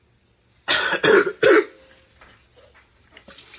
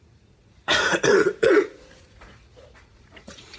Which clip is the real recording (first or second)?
first